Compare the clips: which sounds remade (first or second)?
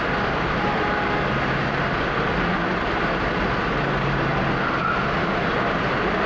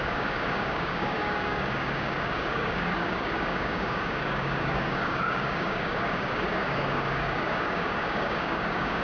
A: second